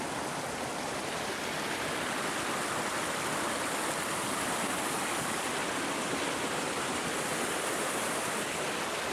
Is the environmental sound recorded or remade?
recorded